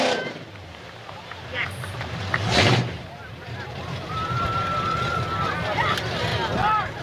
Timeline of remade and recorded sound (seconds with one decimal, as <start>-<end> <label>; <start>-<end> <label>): 0.0-1.5 recorded; 1.5-5.5 remade; 5.5-7.0 recorded

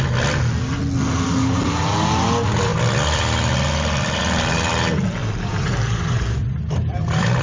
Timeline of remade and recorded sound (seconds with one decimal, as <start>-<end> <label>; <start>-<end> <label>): 0.0-5.2 recorded; 5.2-6.5 remade; 6.5-7.4 recorded

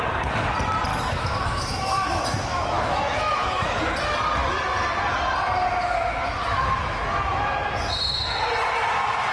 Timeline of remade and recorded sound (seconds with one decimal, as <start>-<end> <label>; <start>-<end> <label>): 0.0-0.9 recorded; 0.9-3.8 remade; 3.8-5.8 recorded; 5.8-7.0 remade; 7.0-9.3 recorded